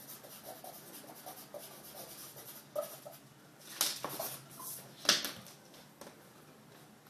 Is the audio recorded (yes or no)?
yes